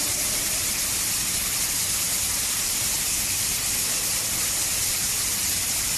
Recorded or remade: remade